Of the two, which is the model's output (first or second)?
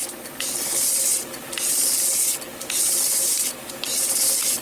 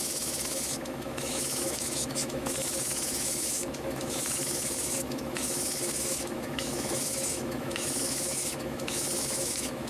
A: second